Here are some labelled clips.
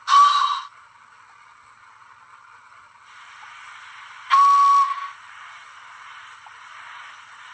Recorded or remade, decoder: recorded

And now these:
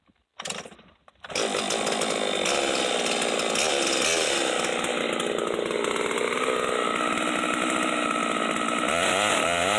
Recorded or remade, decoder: recorded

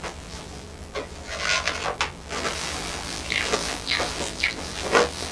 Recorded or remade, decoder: remade, vocoder, BigVGAN v2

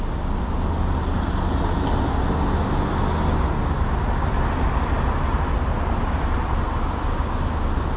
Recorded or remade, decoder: recorded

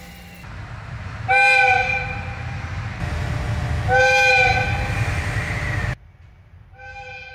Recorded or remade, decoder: recorded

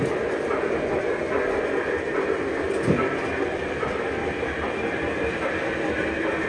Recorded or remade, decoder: recorded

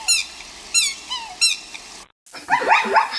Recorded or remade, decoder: recorded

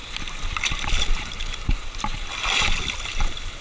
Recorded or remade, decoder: recorded